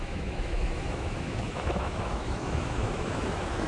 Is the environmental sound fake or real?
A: fake